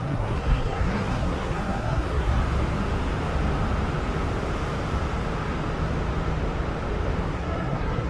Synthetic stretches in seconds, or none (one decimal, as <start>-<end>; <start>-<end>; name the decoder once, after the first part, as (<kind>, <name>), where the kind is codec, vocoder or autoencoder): 0.0-2.4 (codec, SNAC); 7.2-8.1